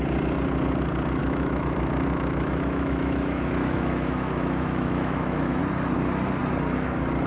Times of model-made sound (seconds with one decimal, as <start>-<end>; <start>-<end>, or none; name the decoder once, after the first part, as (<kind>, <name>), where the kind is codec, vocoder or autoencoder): 1.2-5.6 (autoencoder, DAC-VAE)